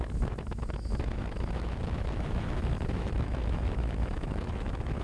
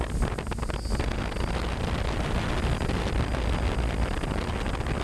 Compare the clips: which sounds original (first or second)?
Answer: second